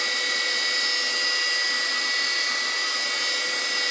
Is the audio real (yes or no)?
yes